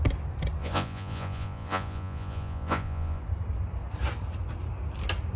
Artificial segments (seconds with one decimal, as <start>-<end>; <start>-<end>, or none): 0.6-3.2